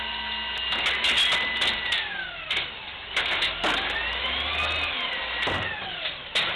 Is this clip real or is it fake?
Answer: real